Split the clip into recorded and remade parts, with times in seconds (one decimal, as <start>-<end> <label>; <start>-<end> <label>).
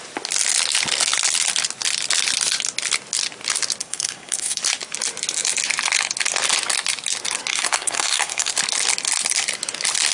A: 0.0-3.8 recorded; 3.8-4.6 remade; 4.6-7.5 recorded; 7.5-8.5 remade; 8.5-10.1 recorded